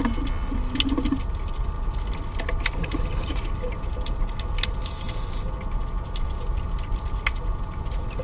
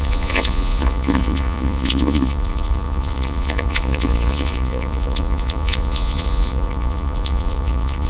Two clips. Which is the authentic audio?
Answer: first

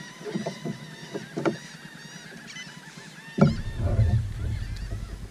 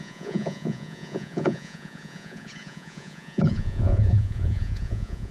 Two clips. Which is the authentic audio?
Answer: first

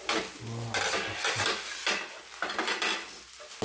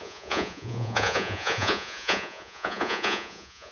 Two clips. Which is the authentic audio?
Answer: first